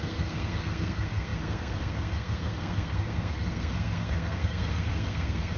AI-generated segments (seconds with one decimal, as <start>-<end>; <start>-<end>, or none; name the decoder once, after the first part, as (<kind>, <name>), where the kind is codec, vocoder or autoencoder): 0.0-5.6 (codec, SNAC)